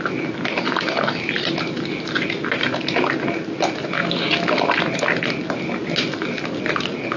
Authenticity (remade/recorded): recorded